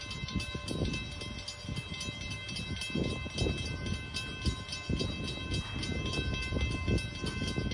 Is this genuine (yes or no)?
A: yes